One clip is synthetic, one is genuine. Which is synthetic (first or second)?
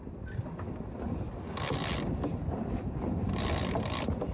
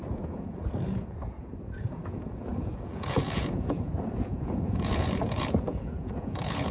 second